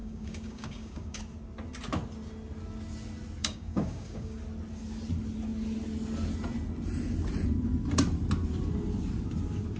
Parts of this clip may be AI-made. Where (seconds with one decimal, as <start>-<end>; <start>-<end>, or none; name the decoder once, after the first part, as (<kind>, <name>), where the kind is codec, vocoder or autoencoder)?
0.0-1.2 (codec, DAC); 3.4-4.4